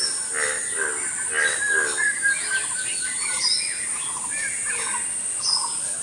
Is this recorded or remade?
recorded